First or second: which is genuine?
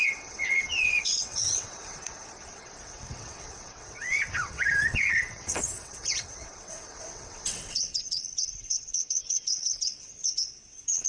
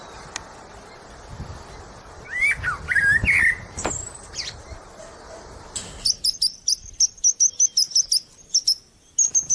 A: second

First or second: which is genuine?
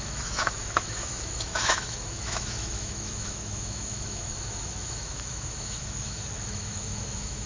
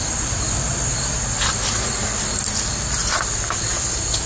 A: second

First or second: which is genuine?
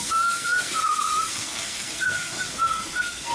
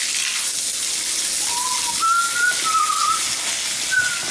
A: second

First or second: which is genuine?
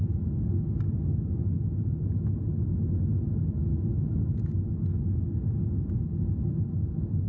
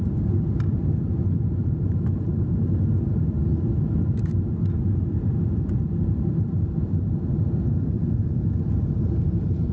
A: first